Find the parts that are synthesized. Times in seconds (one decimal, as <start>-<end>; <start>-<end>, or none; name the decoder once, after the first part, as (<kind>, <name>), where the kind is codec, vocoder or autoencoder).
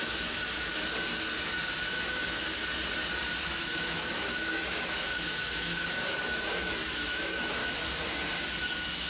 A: 0.0-0.7 (autoencoder, DAC-VAE); 1.9-2.6; 3.3-7.6; 8.6-9.1